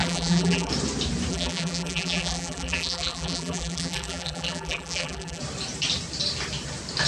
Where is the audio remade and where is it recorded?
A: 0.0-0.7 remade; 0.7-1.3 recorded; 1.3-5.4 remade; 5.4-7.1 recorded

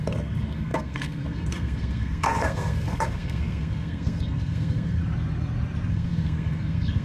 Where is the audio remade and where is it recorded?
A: 0.0-5.0 remade; 5.0-5.9 recorded; 5.9-7.0 remade

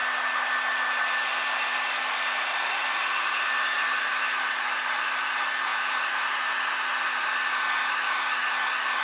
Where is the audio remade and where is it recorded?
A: 0.0-5.7 recorded; 5.7-6.3 remade; 6.3-9.0 recorded

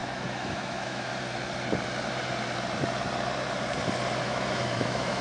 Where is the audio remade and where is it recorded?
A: 0.0-1.1 remade; 1.1-4.2 recorded; 4.2-5.2 remade